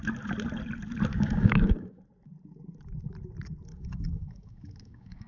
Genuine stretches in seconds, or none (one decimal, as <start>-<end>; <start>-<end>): 0.0-1.1; 2.0-3.7